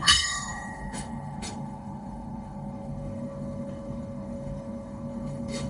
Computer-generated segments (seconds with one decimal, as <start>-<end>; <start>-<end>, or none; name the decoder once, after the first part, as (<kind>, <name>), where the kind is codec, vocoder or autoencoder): 0.0-5.7 (codec, HILCodec)